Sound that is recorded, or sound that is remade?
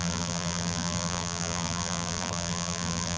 remade